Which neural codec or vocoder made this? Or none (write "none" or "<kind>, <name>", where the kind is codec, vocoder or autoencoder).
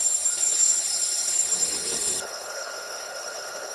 codec, HILCodec